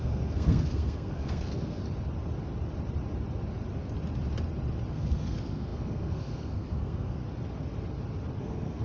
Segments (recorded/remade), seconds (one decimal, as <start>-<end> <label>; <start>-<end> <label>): 0.0-1.8 remade; 1.8-4.9 recorded; 4.9-7.2 remade; 7.2-8.4 recorded; 8.4-8.8 remade